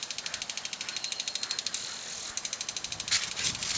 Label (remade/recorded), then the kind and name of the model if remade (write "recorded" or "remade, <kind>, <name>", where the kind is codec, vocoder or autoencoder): recorded